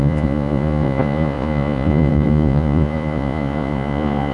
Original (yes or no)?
no